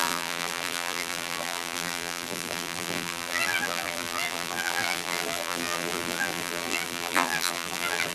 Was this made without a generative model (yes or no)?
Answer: no